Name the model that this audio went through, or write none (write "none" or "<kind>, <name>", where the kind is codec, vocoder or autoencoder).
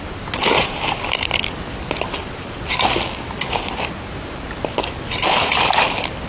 none